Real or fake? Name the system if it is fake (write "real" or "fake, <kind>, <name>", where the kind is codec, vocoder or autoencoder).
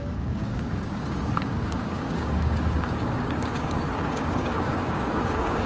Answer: fake, codec, DAC